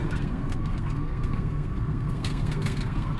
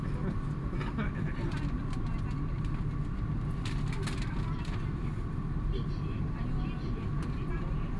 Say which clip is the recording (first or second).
second